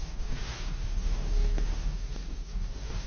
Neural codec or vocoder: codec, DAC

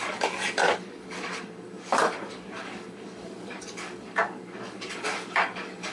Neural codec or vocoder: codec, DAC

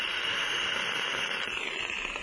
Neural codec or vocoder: none